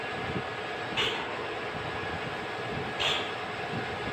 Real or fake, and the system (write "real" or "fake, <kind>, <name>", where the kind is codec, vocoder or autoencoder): real